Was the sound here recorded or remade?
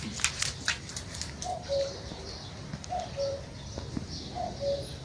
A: recorded